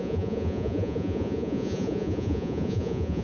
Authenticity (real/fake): fake